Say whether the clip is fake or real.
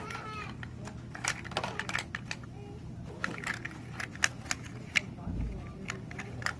real